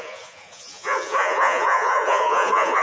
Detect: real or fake fake